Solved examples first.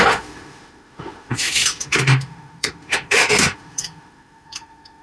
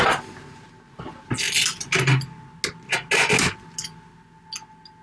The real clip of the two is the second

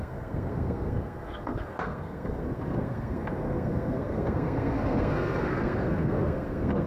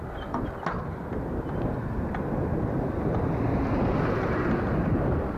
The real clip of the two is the second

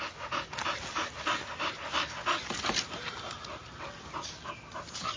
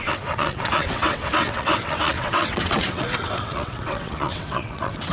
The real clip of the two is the first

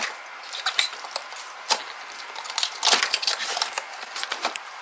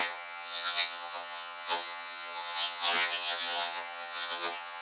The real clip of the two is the first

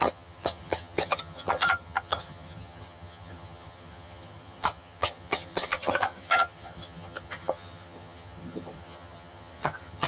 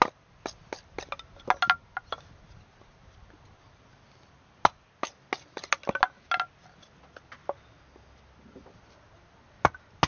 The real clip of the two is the second